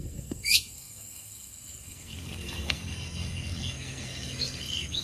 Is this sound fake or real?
fake